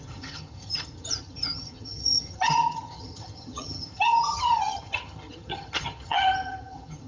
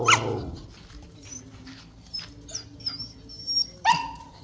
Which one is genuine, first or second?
second